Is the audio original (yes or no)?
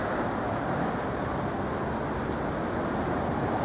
yes